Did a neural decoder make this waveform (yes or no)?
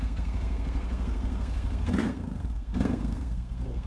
yes